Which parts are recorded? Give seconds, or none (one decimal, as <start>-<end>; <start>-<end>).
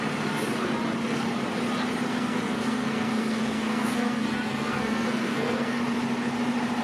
0.0-2.1; 5.8-6.8